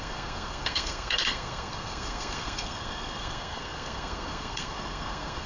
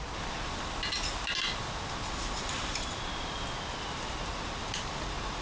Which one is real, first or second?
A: second